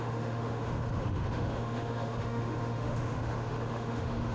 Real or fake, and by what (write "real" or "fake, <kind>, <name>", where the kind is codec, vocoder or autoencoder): fake, autoencoder, DAC-VAE